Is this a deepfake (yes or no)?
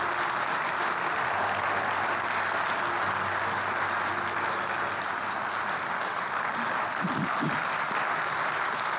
no